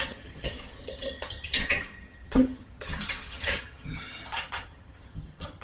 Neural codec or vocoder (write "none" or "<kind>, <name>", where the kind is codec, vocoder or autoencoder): vocoder, HiFi-GAN